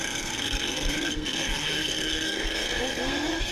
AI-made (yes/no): yes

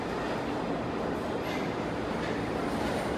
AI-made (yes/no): no